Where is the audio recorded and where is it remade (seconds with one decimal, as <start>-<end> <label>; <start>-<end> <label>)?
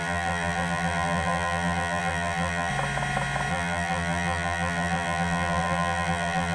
0.0-2.7 remade; 2.7-3.5 recorded; 3.5-6.5 remade